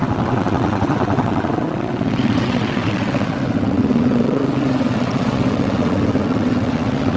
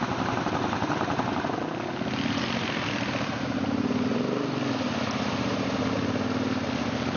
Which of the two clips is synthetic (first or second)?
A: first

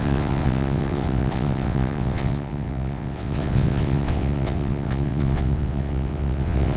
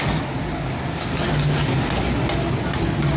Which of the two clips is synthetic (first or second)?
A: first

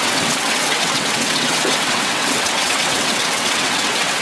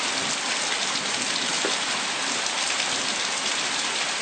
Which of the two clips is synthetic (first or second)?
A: first